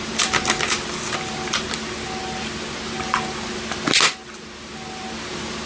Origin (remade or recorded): recorded